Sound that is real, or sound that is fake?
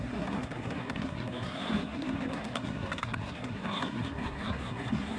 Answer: fake